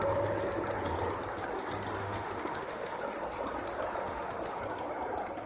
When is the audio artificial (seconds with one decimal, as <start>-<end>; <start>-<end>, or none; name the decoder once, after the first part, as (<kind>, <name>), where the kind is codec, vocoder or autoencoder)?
2.0-3.0 (autoencoder, DAC-VAE); 4.0-4.6